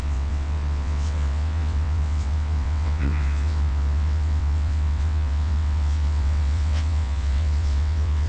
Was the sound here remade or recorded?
remade